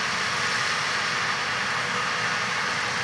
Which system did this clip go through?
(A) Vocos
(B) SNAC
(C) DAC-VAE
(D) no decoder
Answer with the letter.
D